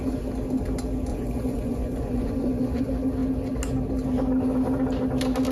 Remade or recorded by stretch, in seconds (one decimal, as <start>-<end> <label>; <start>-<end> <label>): 0.0-1.1 recorded; 1.1-2.8 remade; 2.8-5.5 recorded